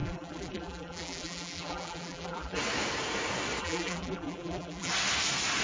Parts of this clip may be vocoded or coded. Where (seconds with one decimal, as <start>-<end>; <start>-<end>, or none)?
0.0-2.6; 3.6-4.9